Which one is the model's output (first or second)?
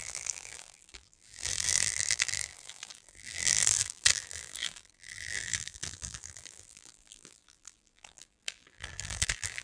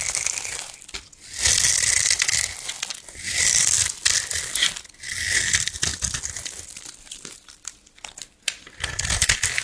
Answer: first